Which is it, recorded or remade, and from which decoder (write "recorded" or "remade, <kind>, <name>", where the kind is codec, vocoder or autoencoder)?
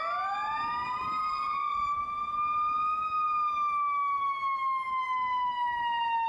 recorded